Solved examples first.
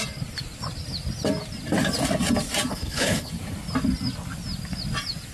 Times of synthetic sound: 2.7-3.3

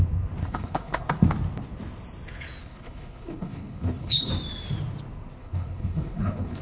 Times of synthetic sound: 0.4-1.0; 2.6-4.3; 5.4-6.6

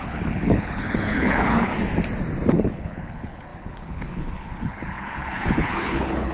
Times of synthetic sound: 0.0-1.7; 2.5-6.3